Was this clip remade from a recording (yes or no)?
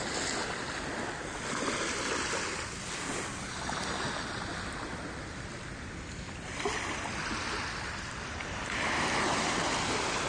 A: no